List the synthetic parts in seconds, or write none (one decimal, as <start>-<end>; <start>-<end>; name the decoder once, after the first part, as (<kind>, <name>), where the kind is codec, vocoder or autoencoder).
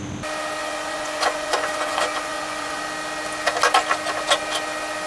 0.6-2.8 (vocoder, Vocos)